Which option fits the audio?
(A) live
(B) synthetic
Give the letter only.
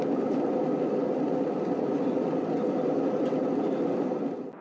B